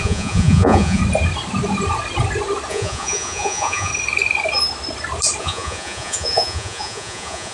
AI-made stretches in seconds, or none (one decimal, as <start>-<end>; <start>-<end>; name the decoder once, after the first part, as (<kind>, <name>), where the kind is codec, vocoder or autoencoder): 0.0-1.0 (vocoder, Vocos); 2.7-3.9; 5.4-7.5

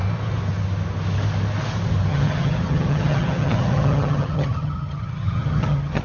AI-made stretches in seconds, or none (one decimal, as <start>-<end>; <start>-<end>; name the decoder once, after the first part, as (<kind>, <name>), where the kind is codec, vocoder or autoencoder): 2.1-6.0 (vocoder, HiFi-GAN)